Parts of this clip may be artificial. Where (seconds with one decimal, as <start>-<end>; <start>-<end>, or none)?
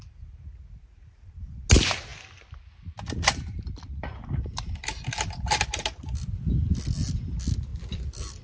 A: none